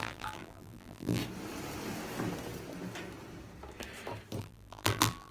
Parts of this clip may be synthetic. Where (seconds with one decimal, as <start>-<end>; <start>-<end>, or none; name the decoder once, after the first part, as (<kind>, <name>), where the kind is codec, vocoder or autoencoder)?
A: 0.0-1.2 (vocoder, BigVGAN v2); 4.4-5.3